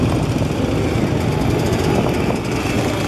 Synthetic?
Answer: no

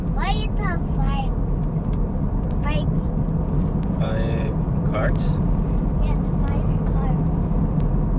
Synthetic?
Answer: yes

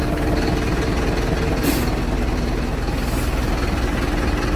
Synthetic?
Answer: no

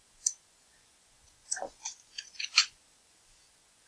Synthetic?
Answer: yes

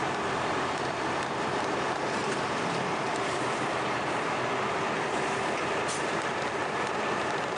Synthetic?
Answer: yes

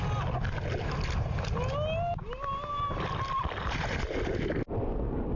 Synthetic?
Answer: no